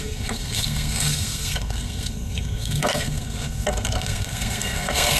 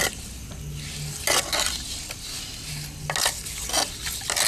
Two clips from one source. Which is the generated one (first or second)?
first